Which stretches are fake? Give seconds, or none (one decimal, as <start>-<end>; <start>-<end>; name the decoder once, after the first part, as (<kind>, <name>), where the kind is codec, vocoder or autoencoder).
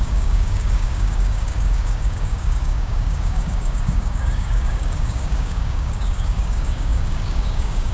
0.0-7.9 (codec, DAC)